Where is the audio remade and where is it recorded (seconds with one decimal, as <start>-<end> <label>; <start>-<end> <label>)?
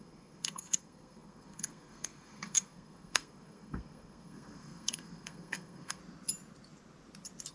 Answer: 0.0-6.0 remade; 6.0-7.5 recorded